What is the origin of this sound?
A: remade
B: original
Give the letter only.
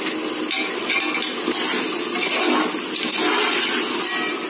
B